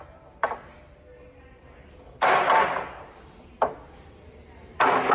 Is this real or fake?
real